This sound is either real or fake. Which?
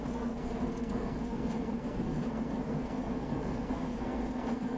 fake